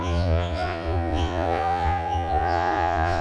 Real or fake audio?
fake